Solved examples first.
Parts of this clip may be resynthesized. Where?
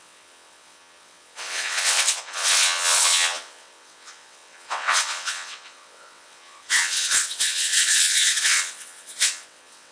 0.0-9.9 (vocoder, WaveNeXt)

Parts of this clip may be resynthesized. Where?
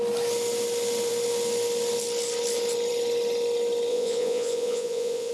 3.9-5.3 (vocoder, Vocos)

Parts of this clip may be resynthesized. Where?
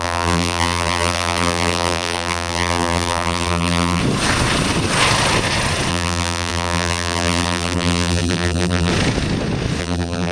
0.0-4.0 (vocoder, BigVGAN v2); 5.9-8.9; 9.8-10.3